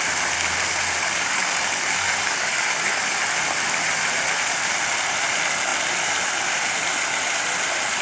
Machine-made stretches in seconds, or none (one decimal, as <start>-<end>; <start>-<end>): 1.0-3.1